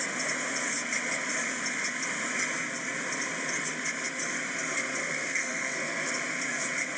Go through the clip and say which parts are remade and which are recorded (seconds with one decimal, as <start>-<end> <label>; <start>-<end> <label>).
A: 0.0-5.0 recorded; 5.0-6.1 remade; 6.1-7.0 recorded